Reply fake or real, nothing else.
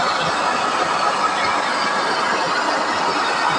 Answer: real